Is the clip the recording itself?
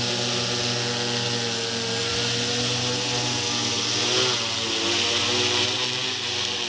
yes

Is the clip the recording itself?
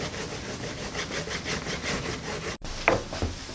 yes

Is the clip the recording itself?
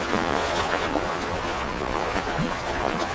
no